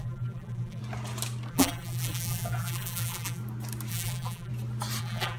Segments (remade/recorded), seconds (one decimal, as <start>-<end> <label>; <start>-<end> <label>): 0.0-0.8 remade; 0.8-1.5 recorded; 1.5-3.4 remade; 3.4-3.9 recorded; 3.9-4.5 remade; 4.5-5.0 recorded; 5.0-5.4 remade